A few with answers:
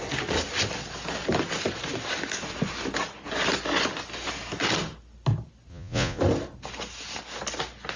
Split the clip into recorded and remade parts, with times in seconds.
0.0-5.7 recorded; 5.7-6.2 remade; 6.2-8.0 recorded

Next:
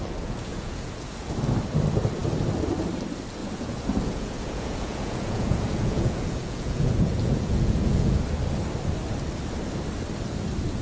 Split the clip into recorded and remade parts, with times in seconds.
0.0-0.5 recorded; 0.5-1.3 remade; 1.3-3.4 recorded; 3.4-8.2 remade; 8.2-10.8 recorded

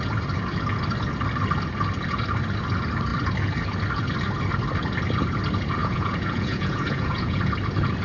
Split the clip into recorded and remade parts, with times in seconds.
0.0-5.8 recorded; 5.8-7.4 remade; 7.4-8.0 recorded

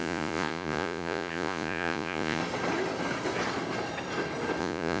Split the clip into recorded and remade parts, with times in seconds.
0.0-2.4 remade; 2.4-4.6 recorded; 4.6-5.0 remade

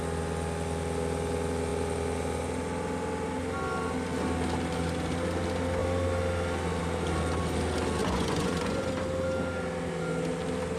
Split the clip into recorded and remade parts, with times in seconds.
0.0-8.0 recorded; 8.0-8.9 remade; 8.9-10.8 recorded

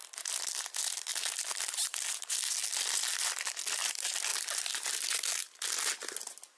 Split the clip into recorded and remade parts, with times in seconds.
0.0-6.6 recorded

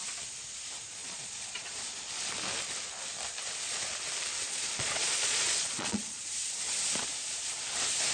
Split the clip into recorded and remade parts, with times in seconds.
0.0-1.0 recorded; 1.0-1.9 remade; 1.9-4.4 recorded; 4.4-6.2 remade; 6.2-8.1 recorded

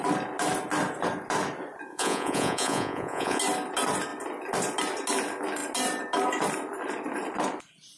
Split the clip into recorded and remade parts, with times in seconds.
0.0-1.9 recorded; 1.9-3.4 remade; 3.4-8.0 recorded